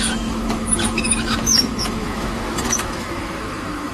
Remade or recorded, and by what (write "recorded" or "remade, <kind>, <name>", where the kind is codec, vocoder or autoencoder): remade, autoencoder, DAC-VAE